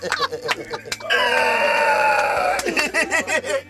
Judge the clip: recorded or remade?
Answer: recorded